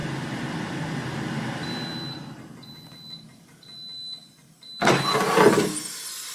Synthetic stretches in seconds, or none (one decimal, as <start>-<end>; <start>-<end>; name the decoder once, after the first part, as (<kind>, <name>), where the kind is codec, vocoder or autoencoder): none